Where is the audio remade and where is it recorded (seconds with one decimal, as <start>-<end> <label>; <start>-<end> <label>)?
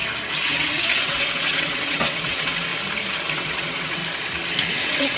0.0-0.5 recorded; 0.5-2.7 remade; 2.7-3.3 recorded; 3.3-4.0 remade; 4.0-4.7 recorded; 4.7-5.2 remade